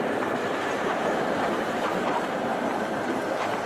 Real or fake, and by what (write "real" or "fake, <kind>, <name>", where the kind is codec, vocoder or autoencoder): fake, vocoder, BigVGAN v2